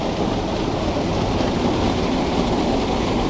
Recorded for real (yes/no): yes